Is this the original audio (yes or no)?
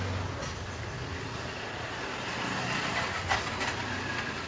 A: yes